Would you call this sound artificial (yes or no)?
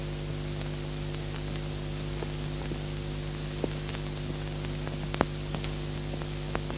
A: no